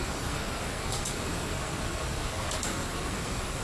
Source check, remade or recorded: remade